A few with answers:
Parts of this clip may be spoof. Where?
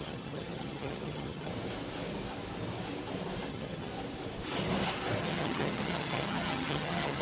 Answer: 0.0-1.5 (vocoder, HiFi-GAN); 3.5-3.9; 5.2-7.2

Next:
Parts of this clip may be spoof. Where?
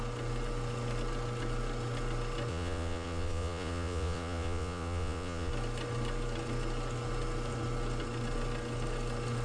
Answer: 2.5-5.5 (vocoder, Vocos)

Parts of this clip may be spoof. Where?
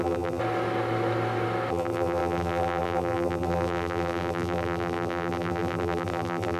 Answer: 0.0-0.4 (vocoder, BigVGAN v2); 1.7-6.6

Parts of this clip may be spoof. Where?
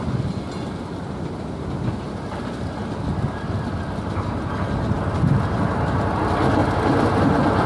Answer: none